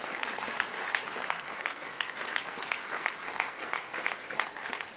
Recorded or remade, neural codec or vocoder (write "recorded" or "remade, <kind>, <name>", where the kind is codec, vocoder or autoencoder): remade, codec, SNAC